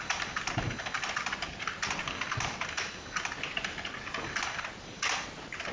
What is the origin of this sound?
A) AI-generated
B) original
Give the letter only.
B